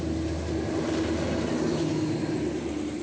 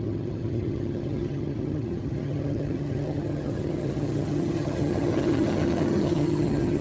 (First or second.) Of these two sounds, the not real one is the second